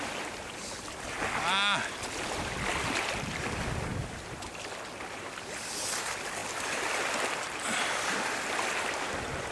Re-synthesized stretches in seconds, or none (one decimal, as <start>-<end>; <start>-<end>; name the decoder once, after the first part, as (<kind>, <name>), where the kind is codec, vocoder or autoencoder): 3.9-4.6 (vocoder, BigVGAN v2); 6.4-9.0